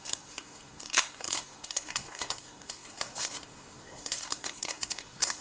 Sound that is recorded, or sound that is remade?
remade